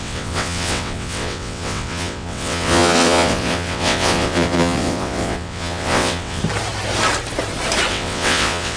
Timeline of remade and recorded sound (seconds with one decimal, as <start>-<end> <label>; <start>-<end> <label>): 0.0-6.4 remade; 6.4-7.9 recorded; 7.9-8.8 remade